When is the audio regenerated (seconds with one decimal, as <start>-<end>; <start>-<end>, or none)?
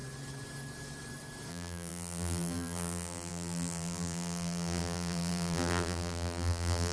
1.5-6.9